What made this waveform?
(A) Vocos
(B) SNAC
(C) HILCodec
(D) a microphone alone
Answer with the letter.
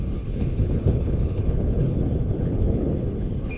C